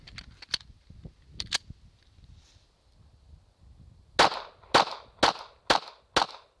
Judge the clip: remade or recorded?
recorded